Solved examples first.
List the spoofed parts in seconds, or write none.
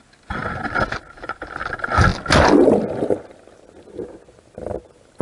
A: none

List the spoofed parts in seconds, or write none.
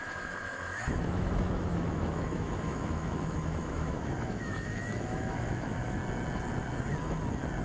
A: 0.0-6.0 (autoencoder, DAC-VAE)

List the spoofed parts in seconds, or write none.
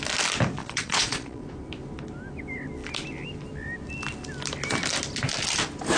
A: 0.6-1.4 (vocoder, Vocos)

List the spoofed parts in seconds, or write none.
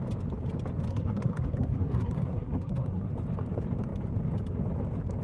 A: 0.9-3.1 (codec, SNAC)